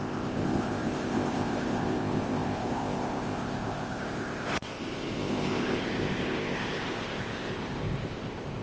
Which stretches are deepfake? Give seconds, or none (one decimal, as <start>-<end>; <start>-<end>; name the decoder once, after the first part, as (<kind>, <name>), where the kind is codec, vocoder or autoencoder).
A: 0.0-8.6 (codec, ZipCodec)